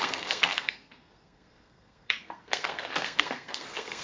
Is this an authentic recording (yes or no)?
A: no